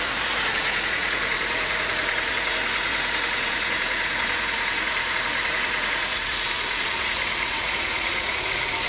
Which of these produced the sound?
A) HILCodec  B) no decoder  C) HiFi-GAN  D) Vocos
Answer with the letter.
D